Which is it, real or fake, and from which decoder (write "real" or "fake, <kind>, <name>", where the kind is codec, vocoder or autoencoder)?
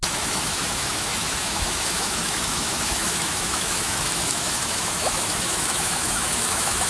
fake, autoencoder, DAC-VAE